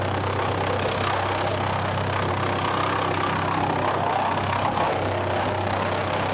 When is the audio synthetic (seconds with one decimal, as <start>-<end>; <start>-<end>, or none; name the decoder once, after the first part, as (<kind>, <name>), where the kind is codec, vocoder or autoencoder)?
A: none